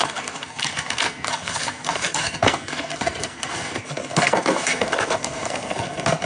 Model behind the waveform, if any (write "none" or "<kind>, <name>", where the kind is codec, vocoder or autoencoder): codec, SNAC